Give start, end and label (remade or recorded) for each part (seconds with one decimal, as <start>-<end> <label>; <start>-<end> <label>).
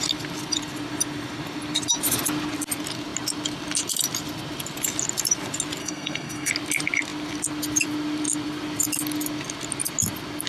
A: 0.0-5.8 recorded; 5.8-6.5 remade; 6.5-10.5 recorded